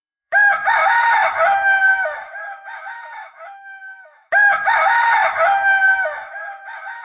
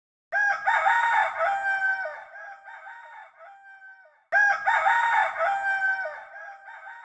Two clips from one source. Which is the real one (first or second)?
second